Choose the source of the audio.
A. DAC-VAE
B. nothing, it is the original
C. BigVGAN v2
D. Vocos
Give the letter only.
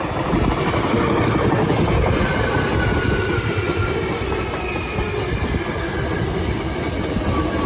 B